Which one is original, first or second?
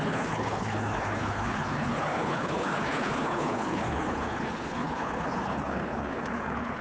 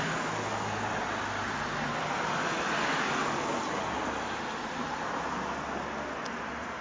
second